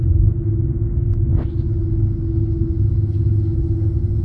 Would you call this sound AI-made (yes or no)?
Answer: no